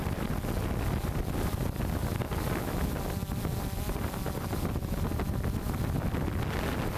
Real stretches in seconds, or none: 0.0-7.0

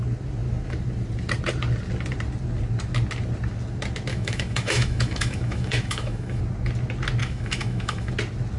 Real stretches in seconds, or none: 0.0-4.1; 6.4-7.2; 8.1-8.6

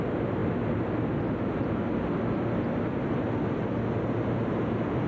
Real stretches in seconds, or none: 0.0-5.1